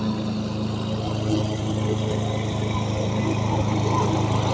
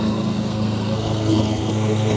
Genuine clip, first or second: first